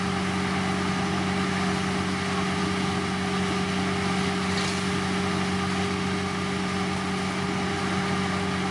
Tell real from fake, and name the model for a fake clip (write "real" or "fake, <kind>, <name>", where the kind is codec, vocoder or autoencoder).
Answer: real